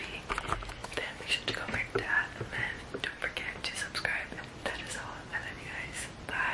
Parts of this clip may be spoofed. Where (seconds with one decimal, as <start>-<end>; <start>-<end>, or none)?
0.8-1.4; 5.3-6.1